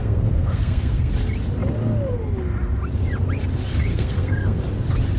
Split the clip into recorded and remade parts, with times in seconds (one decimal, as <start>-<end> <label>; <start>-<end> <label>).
0.0-1.1 remade; 1.1-3.9 recorded; 3.9-4.6 remade; 4.6-5.2 recorded